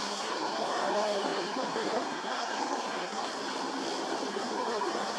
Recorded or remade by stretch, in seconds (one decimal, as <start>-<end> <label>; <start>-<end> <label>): 0.0-3.3 remade; 3.3-4.3 recorded; 4.3-5.2 remade

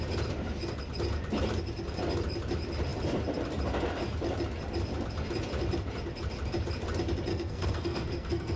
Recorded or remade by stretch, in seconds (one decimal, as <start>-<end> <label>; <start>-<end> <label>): 0.0-7.3 recorded; 7.3-8.6 remade

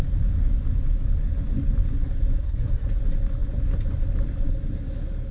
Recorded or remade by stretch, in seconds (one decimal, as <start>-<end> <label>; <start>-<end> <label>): 0.0-2.4 recorded; 2.4-3.0 remade; 3.0-5.3 recorded

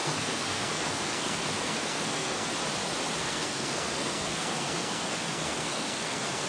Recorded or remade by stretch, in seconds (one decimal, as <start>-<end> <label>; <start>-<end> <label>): 0.0-2.5 remade; 2.5-3.2 recorded; 3.2-6.5 remade

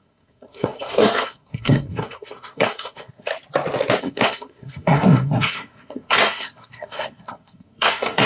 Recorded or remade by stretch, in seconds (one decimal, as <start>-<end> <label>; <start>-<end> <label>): 0.0-3.3 remade; 3.3-4.0 recorded; 4.0-8.3 remade

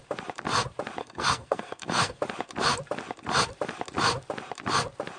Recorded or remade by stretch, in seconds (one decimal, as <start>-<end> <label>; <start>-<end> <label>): 0.0-1.0 recorded; 1.0-2.2 remade; 2.2-5.2 recorded

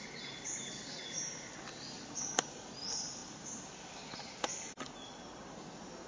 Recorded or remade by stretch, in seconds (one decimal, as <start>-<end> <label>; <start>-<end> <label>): 0.0-6.1 recorded

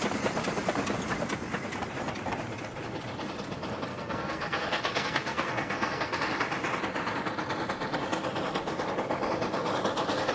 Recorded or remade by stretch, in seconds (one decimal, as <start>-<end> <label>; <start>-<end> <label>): 0.0-3.9 recorded; 3.9-6.2 remade; 6.2-10.3 recorded